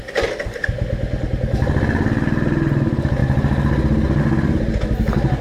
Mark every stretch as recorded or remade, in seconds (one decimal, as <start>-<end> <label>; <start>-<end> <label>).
0.0-5.4 recorded